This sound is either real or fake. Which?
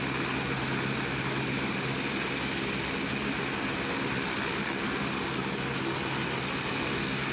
real